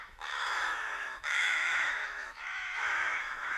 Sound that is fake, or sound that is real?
fake